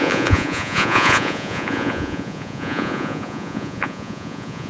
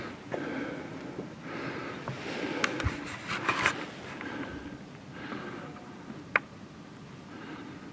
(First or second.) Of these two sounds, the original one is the second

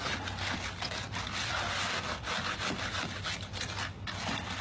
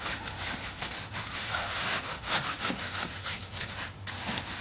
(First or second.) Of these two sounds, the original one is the first